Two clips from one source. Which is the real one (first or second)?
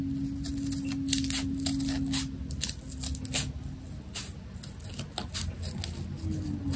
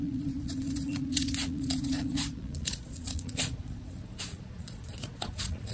first